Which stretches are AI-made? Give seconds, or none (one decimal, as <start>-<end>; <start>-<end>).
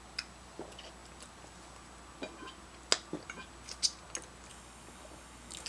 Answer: 4.5-5.7